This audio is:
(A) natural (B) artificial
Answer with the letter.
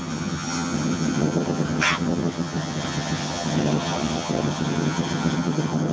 B